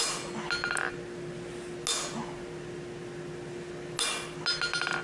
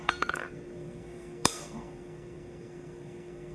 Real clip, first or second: first